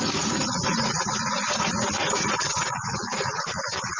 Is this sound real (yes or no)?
no